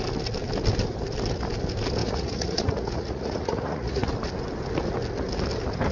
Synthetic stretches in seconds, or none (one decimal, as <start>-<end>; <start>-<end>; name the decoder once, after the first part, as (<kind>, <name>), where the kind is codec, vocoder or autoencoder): 2.0-4.1 (vocoder, Vocos)

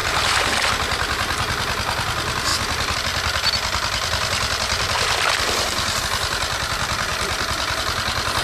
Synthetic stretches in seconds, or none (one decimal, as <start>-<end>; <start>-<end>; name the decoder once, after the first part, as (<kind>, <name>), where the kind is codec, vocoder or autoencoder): 0.0-0.7 (vocoder, BigVGAN v2); 2.5-6.0; 7.1-7.8

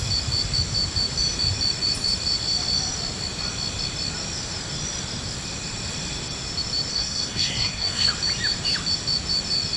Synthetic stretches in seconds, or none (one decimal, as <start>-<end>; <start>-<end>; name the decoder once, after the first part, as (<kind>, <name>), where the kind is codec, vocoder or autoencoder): 6.9-8.1 (codec, SNAC)

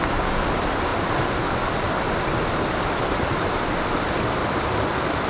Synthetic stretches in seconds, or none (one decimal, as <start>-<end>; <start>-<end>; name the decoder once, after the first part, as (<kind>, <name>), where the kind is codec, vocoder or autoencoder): none

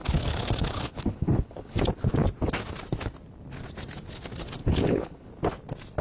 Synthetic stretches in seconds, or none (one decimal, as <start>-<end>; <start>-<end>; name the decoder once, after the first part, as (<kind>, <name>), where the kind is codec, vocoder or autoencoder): 0.0-1.7 (codec, HILCodec); 4.6-5.3